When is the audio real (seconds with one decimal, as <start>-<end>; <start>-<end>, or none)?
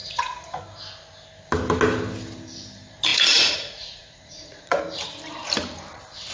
0.6-3.1; 4.8-6.3